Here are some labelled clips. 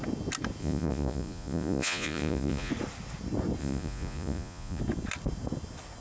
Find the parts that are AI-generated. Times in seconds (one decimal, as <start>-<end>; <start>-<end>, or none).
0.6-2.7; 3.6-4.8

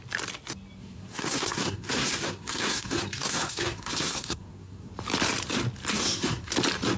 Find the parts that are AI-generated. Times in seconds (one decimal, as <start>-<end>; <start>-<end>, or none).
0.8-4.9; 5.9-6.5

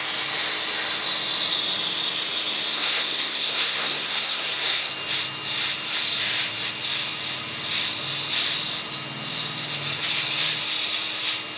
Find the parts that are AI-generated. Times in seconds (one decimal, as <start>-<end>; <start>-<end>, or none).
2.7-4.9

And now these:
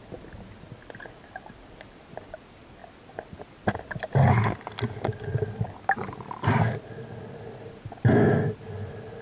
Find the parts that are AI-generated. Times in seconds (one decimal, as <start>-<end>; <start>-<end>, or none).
none